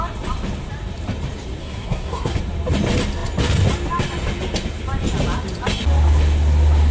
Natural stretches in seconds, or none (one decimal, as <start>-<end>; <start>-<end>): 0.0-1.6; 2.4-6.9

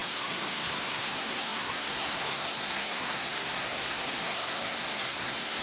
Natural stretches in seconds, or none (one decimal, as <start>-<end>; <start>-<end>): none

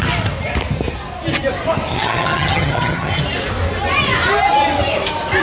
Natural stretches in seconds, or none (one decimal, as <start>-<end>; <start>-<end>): 0.0-1.9; 3.2-5.4